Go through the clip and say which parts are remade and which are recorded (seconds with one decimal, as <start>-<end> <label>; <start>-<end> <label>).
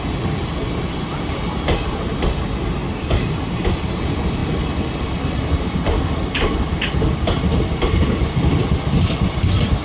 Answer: 0.0-9.8 recorded